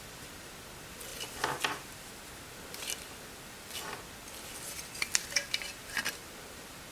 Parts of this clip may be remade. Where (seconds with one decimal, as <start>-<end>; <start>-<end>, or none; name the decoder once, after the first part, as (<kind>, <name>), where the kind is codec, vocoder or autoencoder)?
none